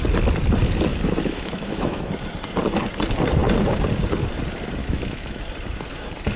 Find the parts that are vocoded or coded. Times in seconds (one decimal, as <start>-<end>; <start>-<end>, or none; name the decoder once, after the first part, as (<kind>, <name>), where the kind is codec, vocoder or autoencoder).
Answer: 0.9-2.1 (autoencoder, DAC-VAE); 4.8-5.4

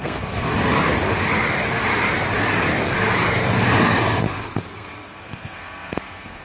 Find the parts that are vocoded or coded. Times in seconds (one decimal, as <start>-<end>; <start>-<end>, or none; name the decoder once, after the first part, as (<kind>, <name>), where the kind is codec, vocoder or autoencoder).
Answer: 0.0-0.5 (codec, SNAC); 4.3-6.4

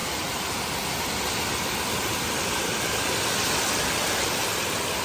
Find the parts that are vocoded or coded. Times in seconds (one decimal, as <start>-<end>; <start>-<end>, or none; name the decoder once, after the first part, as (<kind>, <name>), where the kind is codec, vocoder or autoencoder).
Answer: 0.0-0.6 (vocoder, BigVGAN v2)

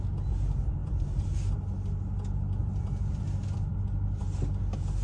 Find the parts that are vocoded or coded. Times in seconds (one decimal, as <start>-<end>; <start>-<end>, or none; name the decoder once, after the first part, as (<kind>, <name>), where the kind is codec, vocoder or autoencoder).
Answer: 0.8-1.5 (vocoder, BigVGAN v2); 2.6-3.2; 3.7-4.2